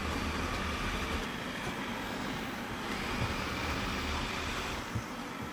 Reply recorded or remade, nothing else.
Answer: recorded